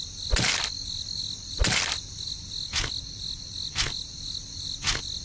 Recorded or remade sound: recorded